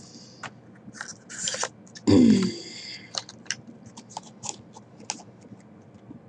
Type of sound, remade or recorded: recorded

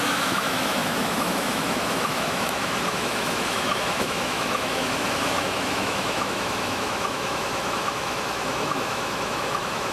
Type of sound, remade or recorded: remade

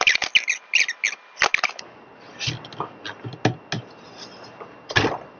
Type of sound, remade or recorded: recorded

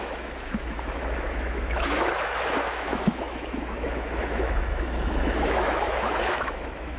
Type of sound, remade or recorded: remade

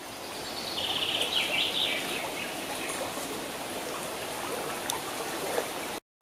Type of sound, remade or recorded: recorded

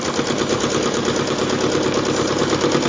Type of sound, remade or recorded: recorded